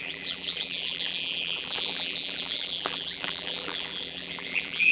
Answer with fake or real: fake